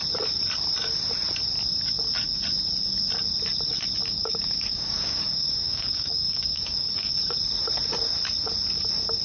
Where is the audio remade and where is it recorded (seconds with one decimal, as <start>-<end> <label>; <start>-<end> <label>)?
0.0-4.0 recorded; 4.0-7.1 remade; 7.1-9.2 recorded